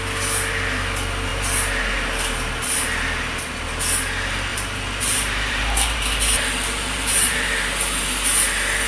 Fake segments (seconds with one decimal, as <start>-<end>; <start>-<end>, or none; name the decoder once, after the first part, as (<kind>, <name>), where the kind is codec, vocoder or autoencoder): 4.5-7.5 (vocoder, BigVGAN v2)